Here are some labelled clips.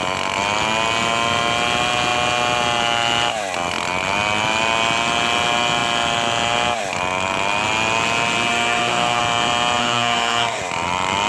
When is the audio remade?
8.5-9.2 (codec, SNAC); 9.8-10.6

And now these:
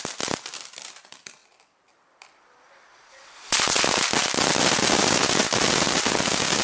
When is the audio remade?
none

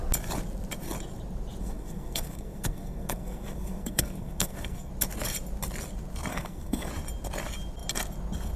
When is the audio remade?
1.6-4.9 (codec, SNAC); 6.3-6.9

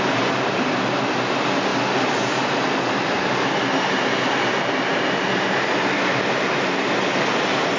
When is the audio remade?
none

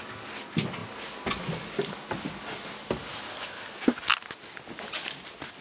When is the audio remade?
none

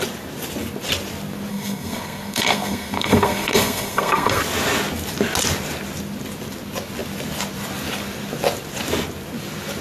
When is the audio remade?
1.5-4.4 (codec, SNAC)